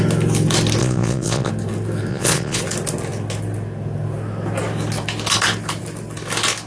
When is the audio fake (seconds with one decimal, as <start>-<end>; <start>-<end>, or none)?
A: 0.8-1.5; 2.1-2.6